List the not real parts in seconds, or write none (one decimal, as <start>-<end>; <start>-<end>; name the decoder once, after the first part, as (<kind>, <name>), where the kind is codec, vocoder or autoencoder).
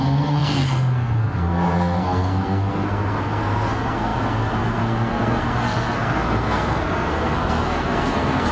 0.0-8.5 (codec, SNAC)